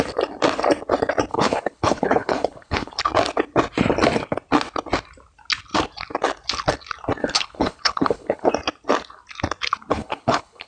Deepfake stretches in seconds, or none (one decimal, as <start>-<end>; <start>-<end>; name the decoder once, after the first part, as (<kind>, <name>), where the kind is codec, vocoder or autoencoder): 1.3-3.0 (codec, HILCodec); 7.2-8.5; 9.9-10.7